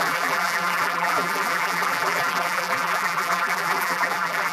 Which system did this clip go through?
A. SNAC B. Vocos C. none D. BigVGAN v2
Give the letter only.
D